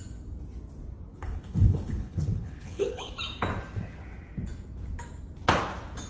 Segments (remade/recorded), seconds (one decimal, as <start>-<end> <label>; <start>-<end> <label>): 0.0-1.1 recorded; 1.1-3.1 remade; 3.1-6.1 recorded